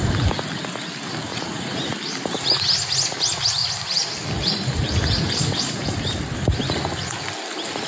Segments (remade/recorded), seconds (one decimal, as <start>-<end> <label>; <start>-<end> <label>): 0.0-1.3 recorded; 1.3-1.9 remade; 1.9-7.9 recorded